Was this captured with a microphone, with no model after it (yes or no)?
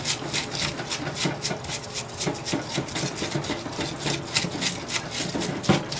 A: yes